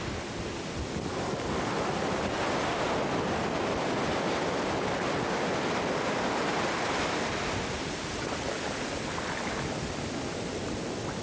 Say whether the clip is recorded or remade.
recorded